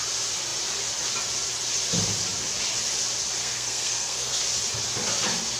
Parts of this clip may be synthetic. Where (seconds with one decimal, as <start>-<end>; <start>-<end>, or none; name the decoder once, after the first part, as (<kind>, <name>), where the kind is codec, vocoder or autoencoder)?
3.4-4.3 (codec, SNAC)